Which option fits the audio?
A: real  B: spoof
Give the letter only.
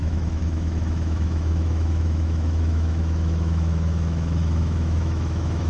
B